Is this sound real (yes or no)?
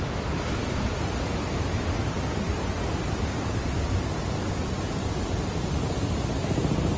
yes